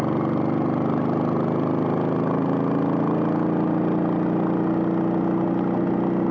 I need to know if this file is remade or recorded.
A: recorded